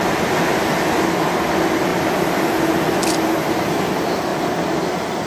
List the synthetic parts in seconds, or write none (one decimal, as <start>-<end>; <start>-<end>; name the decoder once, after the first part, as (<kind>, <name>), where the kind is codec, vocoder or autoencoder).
0.5-1.3 (vocoder, BigVGAN v2); 1.9-2.7